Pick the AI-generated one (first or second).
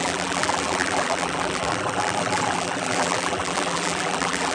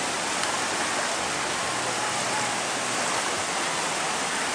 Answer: first